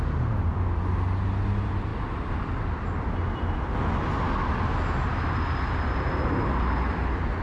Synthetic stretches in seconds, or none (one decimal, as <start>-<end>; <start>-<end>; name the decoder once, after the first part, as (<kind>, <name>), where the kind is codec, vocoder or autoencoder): none